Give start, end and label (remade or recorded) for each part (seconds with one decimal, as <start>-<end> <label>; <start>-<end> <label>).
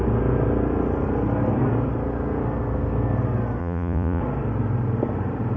0.0-3.6 recorded; 3.6-4.2 remade; 4.2-5.6 recorded